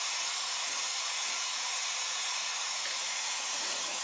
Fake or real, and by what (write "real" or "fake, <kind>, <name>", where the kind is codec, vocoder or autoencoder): fake, vocoder, Vocos